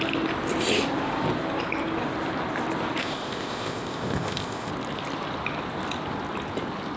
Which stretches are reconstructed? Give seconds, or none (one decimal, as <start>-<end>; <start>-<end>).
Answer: 3.0-4.7

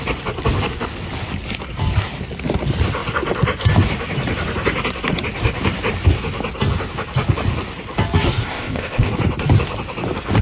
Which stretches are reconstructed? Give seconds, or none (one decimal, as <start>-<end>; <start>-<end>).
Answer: 8.4-9.1

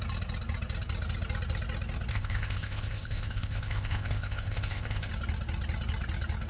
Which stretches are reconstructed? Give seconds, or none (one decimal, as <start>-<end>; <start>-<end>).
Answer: 2.1-5.1

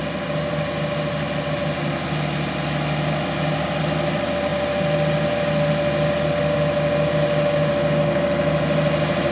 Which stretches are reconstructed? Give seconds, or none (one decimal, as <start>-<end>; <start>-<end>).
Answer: none

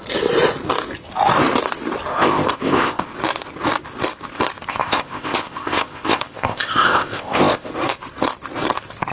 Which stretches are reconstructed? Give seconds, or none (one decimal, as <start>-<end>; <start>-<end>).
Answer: 2.1-3.1; 4.7-7.7

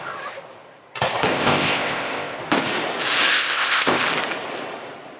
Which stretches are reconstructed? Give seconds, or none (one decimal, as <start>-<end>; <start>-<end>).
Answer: 1.3-2.4; 3.3-4.0

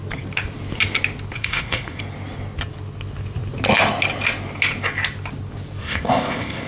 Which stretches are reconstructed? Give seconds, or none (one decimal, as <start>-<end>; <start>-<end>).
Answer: 1.4-2.0; 5.8-6.7